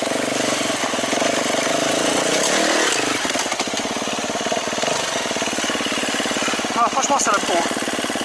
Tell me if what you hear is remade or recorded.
recorded